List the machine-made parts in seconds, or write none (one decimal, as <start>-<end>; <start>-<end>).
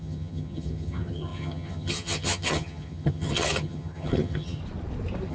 0.0-4.6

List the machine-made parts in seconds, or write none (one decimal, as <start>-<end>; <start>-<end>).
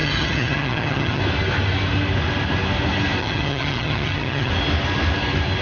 0.0-1.2; 3.2-4.5